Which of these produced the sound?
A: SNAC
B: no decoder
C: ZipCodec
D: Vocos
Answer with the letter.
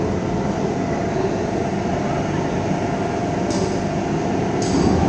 B